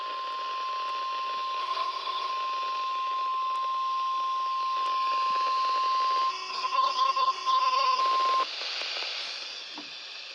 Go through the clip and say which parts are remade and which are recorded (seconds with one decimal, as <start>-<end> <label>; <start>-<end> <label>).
0.0-1.6 recorded; 1.6-2.3 remade; 2.3-6.3 recorded; 6.3-8.0 remade; 8.0-10.3 recorded